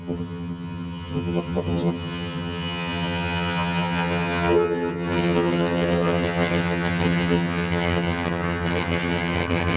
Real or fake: fake